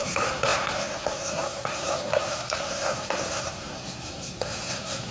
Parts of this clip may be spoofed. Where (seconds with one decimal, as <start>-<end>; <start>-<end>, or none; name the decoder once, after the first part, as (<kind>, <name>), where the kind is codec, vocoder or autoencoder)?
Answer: 0.0-5.1 (codec, SNAC)